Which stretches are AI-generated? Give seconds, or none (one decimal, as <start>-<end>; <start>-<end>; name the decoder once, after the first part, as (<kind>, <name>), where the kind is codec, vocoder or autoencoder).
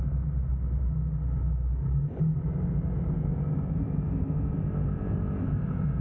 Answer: 1.8-4.1 (vocoder, BigVGAN v2)